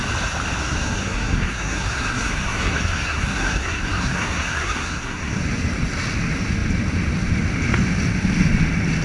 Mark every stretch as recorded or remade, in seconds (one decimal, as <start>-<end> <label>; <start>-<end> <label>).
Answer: 0.0-0.6 recorded; 0.6-5.4 remade; 5.4-9.0 recorded